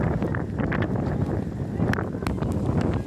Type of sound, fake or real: real